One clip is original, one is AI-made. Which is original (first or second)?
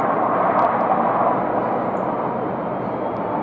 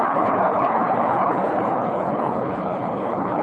first